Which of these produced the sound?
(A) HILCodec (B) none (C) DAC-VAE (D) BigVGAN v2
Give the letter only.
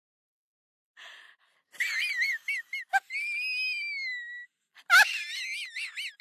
B